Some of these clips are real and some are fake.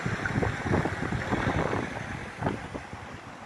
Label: real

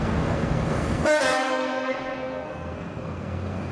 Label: fake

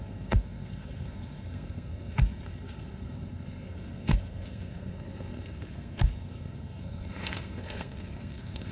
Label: fake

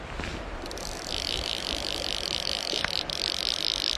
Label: real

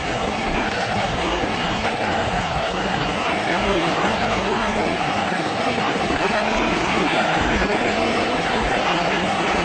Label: fake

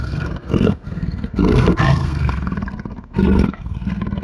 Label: fake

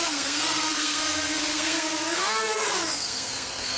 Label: fake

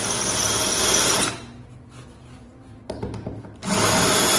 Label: real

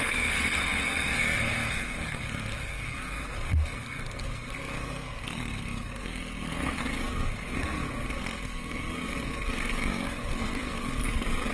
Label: fake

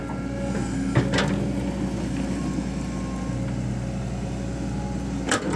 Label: real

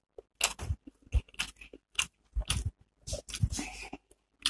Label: real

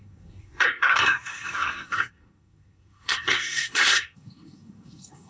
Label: fake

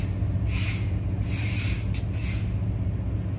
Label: real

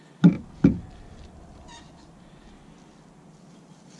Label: real